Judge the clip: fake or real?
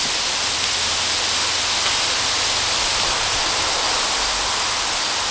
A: real